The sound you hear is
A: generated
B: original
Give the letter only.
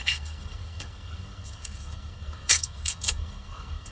A